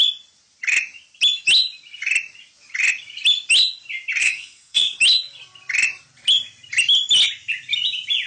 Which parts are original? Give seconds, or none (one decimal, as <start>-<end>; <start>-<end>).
0.0-4.2; 5.0-8.3